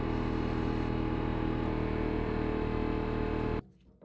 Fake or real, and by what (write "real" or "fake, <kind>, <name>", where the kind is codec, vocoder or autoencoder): real